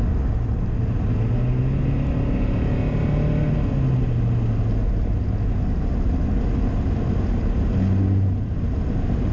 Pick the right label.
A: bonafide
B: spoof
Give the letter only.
A